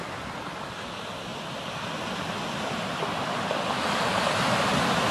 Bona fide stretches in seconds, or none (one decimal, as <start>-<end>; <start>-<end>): 0.0-5.1